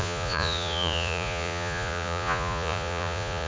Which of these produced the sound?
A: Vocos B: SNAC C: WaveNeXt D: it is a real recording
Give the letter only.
A